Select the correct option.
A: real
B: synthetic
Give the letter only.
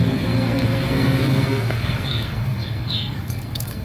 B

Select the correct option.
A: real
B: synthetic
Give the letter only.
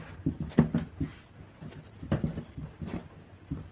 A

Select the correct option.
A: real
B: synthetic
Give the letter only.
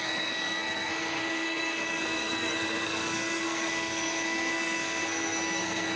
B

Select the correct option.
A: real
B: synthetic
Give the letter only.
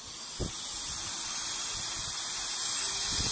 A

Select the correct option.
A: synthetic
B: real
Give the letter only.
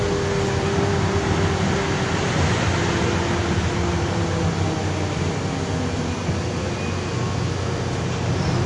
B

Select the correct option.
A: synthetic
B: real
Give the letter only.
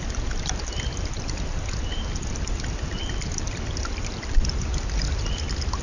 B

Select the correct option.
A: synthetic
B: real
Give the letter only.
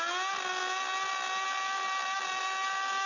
B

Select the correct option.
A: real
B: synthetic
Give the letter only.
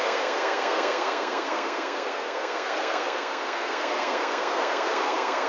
B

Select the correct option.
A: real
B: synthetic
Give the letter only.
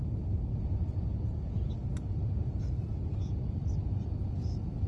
A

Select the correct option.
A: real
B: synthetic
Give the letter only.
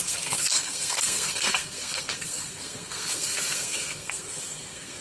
B